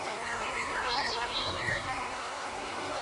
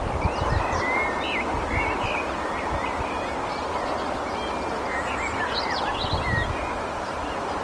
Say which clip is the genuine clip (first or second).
second